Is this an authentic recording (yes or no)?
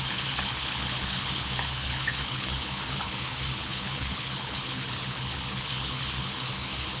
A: no